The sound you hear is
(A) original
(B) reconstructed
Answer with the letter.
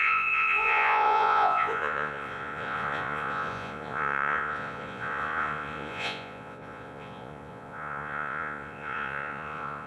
B